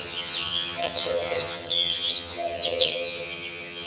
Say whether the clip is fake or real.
fake